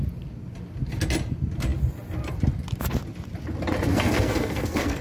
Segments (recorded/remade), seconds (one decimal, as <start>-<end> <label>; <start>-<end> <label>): 0.0-3.9 recorded; 3.9-5.0 remade